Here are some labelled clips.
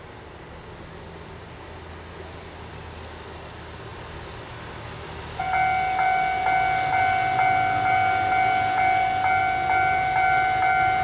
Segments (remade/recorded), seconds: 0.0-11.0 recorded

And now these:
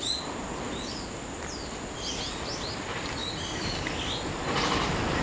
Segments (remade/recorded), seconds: 0.0-5.2 recorded

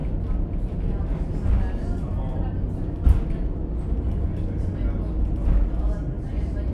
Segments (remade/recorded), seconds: 0.0-6.7 recorded

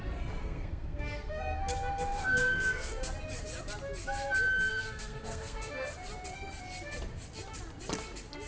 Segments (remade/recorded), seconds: 0.0-0.4 recorded; 0.4-1.6 remade; 1.6-2.1 recorded; 2.1-3.1 remade; 3.1-4.7 recorded; 4.7-5.7 remade; 5.7-8.5 recorded

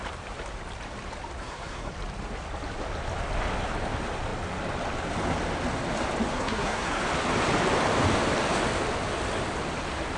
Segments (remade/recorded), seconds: 0.0-1.4 recorded; 1.4-1.9 remade; 1.9-6.3 recorded; 6.3-7.0 remade; 7.0-10.2 recorded

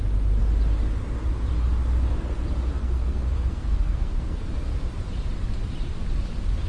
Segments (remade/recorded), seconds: 0.0-2.8 recorded; 2.8-4.5 remade; 4.5-6.7 recorded

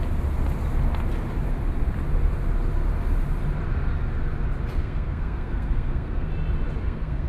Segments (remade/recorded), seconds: 0.0-4.8 recorded; 4.8-6.3 remade; 6.3-6.8 recorded; 6.8-7.3 remade